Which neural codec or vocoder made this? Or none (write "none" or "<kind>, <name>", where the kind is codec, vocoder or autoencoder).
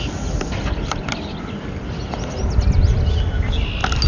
none